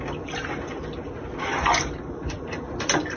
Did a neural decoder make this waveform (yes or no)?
no